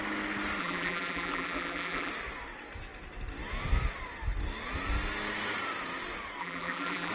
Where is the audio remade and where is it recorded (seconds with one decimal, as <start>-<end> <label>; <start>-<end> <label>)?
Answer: 0.0-0.6 recorded; 0.6-2.1 remade; 2.1-6.4 recorded; 6.4-7.1 remade